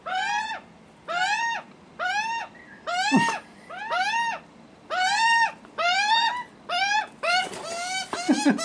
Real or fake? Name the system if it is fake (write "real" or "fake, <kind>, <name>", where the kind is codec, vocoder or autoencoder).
real